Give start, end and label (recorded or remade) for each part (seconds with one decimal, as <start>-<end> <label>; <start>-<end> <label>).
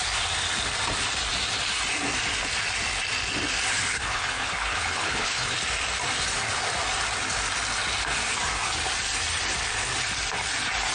0.0-3.7 recorded; 3.7-5.6 remade; 5.6-10.9 recorded